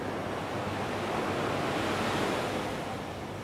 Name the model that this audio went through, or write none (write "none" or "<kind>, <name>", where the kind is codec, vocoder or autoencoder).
none